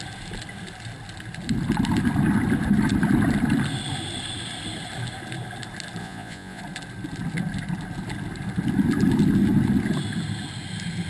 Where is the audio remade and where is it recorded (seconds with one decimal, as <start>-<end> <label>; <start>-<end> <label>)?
0.0-6.0 recorded; 6.0-6.6 remade; 6.6-11.1 recorded